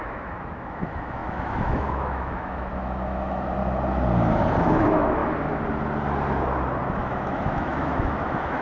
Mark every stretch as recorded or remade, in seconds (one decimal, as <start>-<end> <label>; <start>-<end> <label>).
0.0-3.6 remade; 3.6-4.6 recorded; 4.6-5.2 remade; 5.2-6.9 recorded; 6.9-8.6 remade